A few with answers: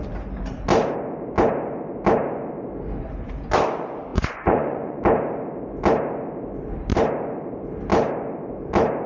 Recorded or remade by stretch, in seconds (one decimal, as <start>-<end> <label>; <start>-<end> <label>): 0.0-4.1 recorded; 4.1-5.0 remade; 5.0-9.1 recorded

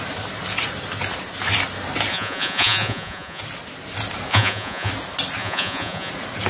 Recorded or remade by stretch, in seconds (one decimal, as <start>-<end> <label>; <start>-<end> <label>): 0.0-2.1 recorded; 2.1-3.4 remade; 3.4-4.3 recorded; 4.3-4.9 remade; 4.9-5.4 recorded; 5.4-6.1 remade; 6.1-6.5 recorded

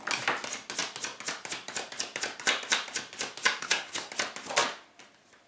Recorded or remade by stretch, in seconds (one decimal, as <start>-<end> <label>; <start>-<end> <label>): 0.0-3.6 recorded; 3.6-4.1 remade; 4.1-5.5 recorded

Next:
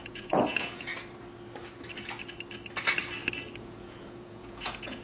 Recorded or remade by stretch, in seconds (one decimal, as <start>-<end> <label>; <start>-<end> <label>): 0.0-0.9 remade; 0.9-3.6 recorded; 3.6-5.0 remade

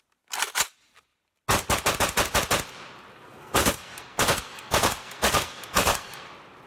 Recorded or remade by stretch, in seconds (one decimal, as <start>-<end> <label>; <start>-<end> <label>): 0.0-3.1 recorded; 3.1-6.3 remade; 6.3-6.7 recorded

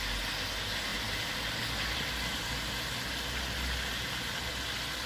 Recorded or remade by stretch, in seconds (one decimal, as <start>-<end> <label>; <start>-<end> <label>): 0.0-0.9 recorded; 0.9-2.9 remade; 2.9-3.9 recorded; 3.9-4.5 remade; 4.5-5.1 recorded

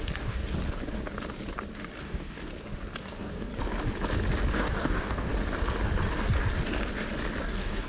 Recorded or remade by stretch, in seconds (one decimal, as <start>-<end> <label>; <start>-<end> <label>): 0.0-0.4 remade; 0.4-2.0 recorded; 2.0-2.5 remade; 2.5-3.0 recorded; 3.0-3.5 remade; 3.5-4.5 recorded; 4.5-5.3 remade; 5.3-7.4 recorded; 7.4-7.9 remade